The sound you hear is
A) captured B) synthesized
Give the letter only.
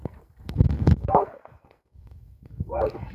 B